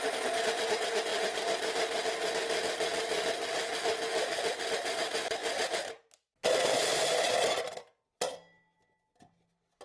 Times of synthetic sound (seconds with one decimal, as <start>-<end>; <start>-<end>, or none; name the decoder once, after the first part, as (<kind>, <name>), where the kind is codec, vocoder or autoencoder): none